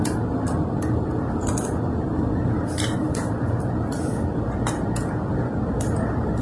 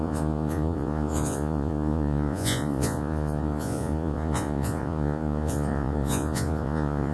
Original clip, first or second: first